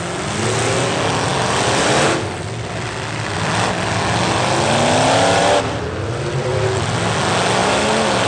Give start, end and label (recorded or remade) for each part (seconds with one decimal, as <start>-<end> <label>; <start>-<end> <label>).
0.0-8.3 recorded